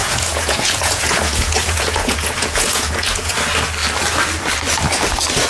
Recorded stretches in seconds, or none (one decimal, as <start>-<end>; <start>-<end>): 3.3-5.5